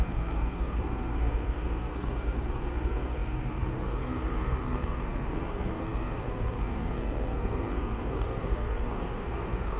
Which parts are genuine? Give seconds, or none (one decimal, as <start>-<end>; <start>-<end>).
none